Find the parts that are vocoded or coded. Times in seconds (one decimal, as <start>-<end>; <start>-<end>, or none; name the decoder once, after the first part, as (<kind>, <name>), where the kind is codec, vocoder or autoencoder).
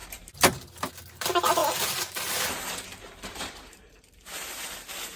0.0-0.9 (vocoder, BigVGAN v2); 1.6-4.7